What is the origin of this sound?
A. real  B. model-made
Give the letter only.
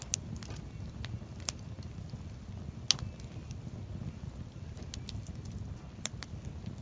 A